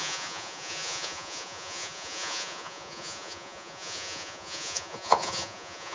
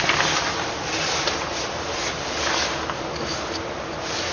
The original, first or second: second